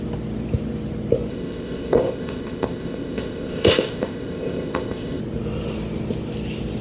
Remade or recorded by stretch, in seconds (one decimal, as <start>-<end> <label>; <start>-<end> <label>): 0.0-1.3 recorded; 1.3-5.2 remade; 5.2-6.8 recorded

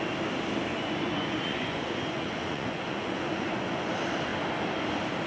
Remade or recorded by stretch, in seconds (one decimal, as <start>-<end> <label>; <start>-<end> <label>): 0.0-0.7 recorded; 0.7-3.9 remade; 3.9-5.3 recorded

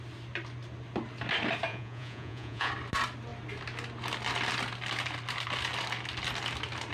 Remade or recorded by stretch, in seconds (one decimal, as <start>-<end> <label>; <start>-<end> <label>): 0.0-1.7 recorded; 1.7-2.7 remade; 2.7-6.9 recorded

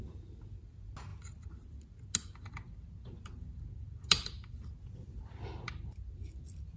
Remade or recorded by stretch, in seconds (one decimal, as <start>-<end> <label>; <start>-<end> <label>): 0.0-6.8 recorded

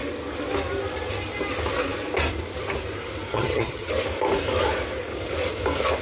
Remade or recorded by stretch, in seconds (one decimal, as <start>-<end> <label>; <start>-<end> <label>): 0.0-3.3 recorded; 3.3-3.9 remade; 3.9-6.0 recorded

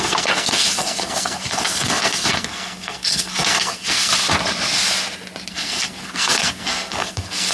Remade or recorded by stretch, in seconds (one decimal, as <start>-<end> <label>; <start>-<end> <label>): 0.0-4.1 remade; 4.1-5.5 recorded; 5.5-7.5 remade

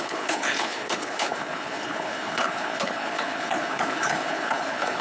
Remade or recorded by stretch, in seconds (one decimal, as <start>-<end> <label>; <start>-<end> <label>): 0.0-5.0 remade

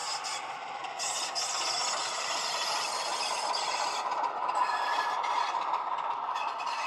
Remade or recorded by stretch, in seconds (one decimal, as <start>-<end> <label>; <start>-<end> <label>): 0.0-0.8 remade; 0.8-6.9 recorded